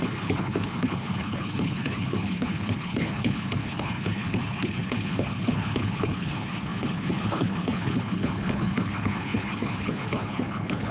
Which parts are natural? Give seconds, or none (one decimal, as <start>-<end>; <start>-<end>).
none